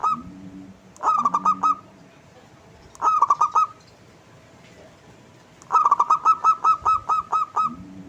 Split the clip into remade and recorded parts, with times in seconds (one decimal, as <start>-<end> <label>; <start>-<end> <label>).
0.0-8.1 recorded